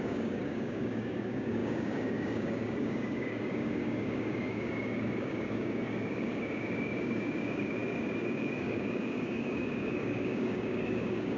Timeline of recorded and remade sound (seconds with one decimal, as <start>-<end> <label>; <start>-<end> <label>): 0.0-11.4 remade